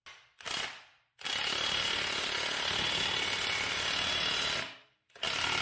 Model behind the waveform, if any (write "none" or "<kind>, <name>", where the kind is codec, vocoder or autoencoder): none